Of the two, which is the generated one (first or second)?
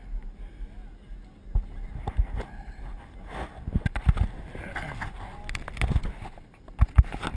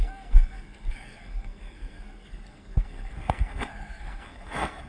second